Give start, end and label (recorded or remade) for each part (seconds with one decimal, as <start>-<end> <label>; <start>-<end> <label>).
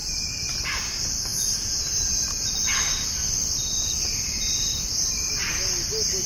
0.0-6.3 recorded